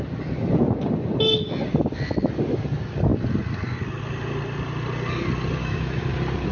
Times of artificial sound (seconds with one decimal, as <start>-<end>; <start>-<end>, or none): 5.6-6.1